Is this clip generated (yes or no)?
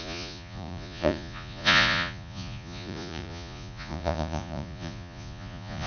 yes